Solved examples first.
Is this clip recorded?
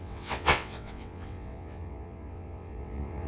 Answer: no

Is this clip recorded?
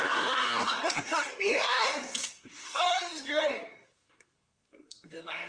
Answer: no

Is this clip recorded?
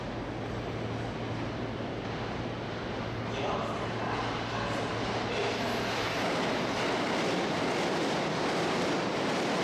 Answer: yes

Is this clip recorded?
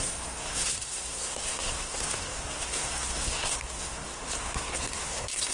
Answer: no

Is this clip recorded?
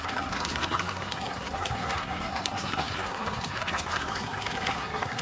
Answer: no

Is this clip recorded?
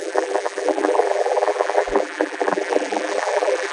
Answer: no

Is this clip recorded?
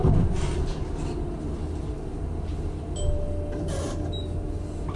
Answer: yes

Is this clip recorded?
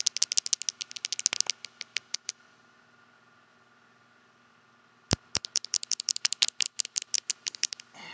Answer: yes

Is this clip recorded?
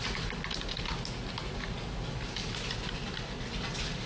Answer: yes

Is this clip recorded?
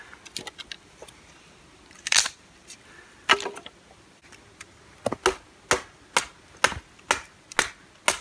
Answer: yes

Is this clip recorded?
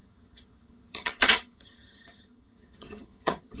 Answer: no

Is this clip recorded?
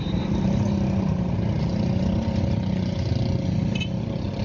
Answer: yes